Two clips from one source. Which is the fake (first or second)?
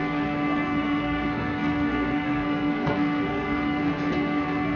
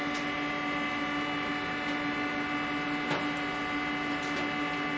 first